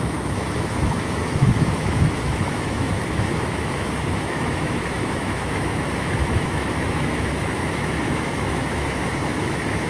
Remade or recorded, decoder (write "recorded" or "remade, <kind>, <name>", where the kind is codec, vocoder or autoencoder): remade, autoencoder, DAC-VAE